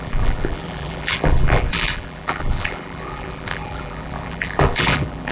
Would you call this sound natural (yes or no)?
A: no